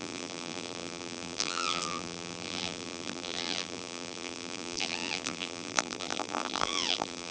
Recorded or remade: remade